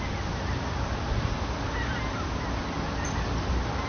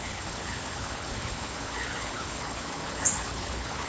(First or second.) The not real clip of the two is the second